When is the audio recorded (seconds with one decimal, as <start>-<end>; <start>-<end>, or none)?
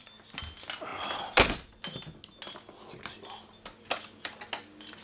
0.0-5.0